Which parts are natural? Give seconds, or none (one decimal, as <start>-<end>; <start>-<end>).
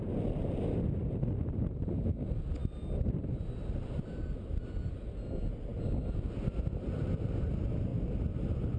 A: 0.0-8.8